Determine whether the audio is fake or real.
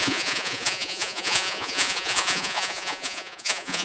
fake